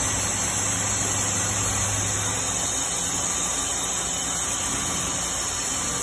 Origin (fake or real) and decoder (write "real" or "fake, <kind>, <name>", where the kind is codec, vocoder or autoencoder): real